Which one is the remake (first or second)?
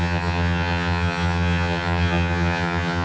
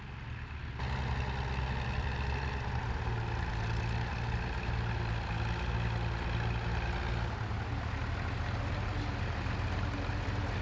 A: first